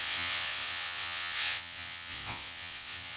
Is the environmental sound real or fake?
fake